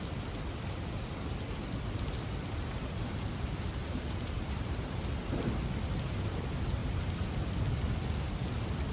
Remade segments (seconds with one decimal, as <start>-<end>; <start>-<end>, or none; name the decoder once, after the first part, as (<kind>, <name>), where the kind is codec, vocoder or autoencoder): 3.8-5.0 (vocoder, BigVGAN v2); 6.8-7.5

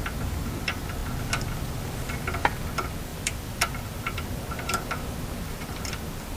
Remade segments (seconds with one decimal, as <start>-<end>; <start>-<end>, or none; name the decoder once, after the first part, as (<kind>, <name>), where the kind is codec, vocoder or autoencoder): 3.1-5.9 (vocoder, BigVGAN v2)